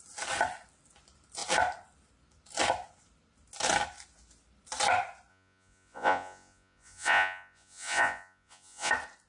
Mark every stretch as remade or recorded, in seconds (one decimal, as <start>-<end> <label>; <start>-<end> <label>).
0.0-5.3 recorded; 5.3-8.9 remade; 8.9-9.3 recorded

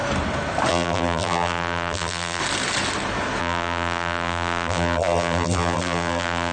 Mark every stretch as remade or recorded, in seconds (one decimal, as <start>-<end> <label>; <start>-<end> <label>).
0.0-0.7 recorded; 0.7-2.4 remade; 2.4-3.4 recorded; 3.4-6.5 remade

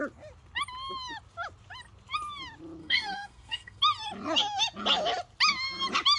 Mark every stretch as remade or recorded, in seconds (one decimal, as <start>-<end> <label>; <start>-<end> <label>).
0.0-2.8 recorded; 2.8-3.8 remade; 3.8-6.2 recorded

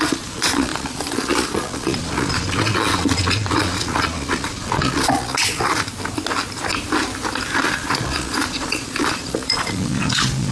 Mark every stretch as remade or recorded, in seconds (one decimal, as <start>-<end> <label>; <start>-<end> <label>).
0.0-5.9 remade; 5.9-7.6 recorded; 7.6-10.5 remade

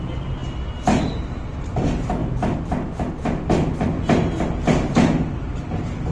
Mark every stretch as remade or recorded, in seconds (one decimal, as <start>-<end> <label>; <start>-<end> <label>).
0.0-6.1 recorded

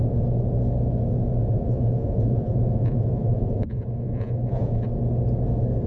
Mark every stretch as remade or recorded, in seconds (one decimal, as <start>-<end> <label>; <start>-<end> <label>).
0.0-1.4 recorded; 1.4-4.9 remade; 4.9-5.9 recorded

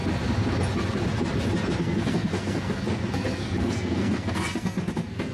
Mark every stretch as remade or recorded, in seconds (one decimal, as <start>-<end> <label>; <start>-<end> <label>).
0.0-1.8 recorded; 1.8-5.3 remade